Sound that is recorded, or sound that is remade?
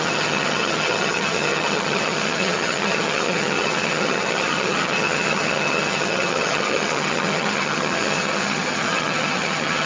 remade